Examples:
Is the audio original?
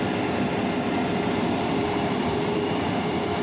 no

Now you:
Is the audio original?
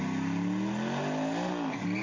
yes